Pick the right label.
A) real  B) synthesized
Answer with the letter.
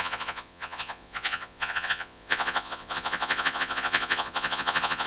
B